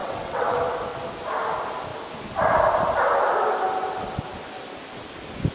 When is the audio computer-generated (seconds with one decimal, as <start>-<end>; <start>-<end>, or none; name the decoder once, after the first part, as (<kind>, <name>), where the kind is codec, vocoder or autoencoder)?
0.0-0.6 (vocoder, WaveNeXt)